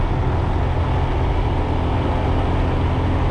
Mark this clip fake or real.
real